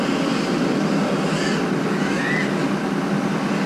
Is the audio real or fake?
real